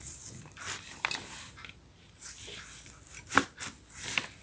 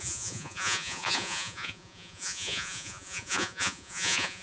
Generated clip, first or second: second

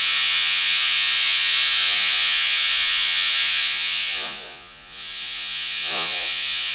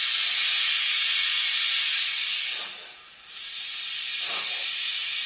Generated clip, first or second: first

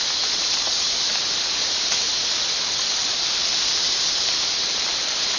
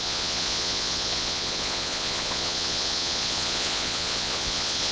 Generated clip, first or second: second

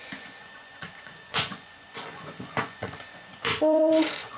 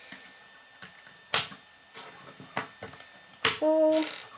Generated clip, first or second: first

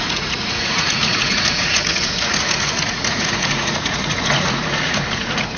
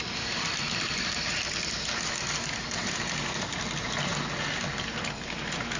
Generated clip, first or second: first